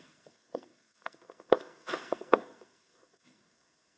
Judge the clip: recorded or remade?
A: remade